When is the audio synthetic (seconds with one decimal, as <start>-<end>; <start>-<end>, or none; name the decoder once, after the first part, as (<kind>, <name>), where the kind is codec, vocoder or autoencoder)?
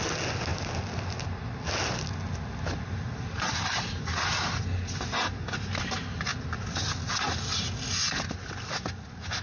none